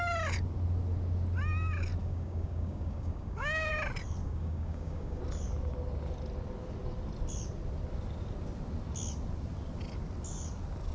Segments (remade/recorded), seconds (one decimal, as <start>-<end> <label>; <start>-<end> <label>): 0.0-2.0 recorded; 2.0-3.7 remade; 3.7-4.2 recorded; 4.2-5.2 remade; 5.2-10.9 recorded